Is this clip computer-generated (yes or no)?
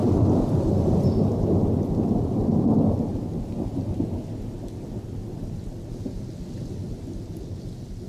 no